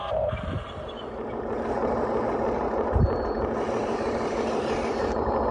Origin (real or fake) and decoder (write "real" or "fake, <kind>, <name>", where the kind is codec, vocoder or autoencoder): fake, vocoder, BigVGAN v2